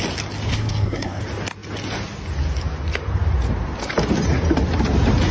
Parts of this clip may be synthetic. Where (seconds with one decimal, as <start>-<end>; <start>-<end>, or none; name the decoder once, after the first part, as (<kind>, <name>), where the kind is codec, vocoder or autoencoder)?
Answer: 0.5-1.2 (codec, SNAC)